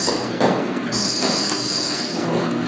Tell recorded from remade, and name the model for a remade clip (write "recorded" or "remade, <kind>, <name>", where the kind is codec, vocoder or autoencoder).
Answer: remade, codec, SNAC